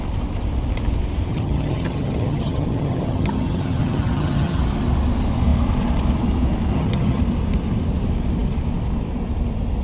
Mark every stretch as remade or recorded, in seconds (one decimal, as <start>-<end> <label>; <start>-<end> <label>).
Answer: 0.0-1.3 recorded; 1.3-4.6 remade; 4.6-6.7 recorded; 6.7-7.2 remade; 7.2-9.8 recorded